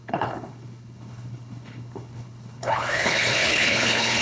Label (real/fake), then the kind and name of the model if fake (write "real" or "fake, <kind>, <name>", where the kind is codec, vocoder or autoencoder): fake, codec, HILCodec